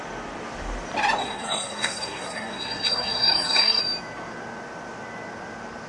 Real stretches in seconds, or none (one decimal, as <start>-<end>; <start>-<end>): 0.0-1.2; 3.8-5.9